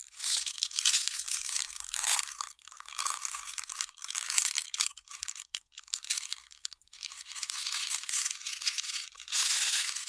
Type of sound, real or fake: fake